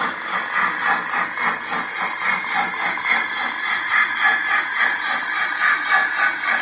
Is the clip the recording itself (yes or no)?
yes